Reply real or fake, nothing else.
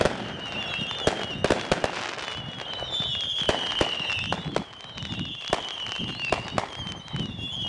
real